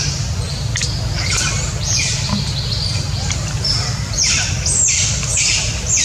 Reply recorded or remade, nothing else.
remade